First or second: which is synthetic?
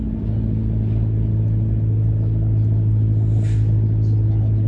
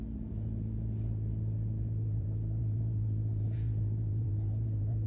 second